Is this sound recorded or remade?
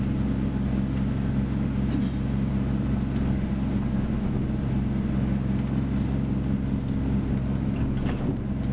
recorded